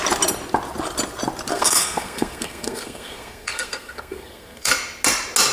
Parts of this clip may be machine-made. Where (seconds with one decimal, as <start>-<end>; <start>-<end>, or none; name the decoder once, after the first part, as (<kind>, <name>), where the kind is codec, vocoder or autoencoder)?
1.5-4.7 (codec, SNAC)